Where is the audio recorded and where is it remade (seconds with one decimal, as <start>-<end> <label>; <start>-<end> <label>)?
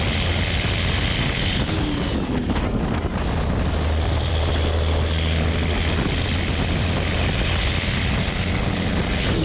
0.0-9.4 recorded